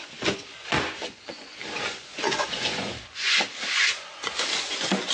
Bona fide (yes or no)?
no